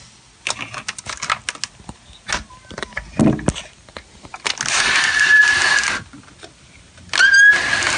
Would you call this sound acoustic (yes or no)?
yes